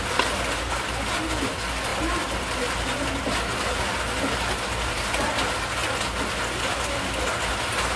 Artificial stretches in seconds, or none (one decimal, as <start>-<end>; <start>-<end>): none